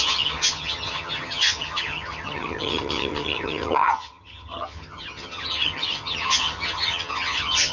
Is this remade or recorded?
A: remade